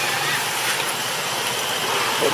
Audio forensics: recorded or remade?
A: recorded